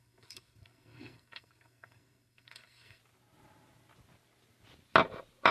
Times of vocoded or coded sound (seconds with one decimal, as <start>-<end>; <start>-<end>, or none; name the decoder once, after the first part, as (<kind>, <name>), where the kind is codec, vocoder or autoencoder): 0.0-3.0 (codec, SNAC)